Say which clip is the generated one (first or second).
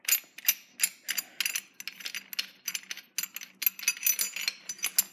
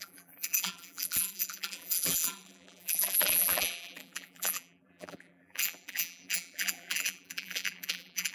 second